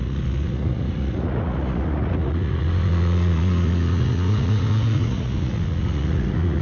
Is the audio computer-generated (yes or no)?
yes